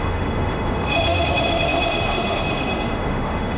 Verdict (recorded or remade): remade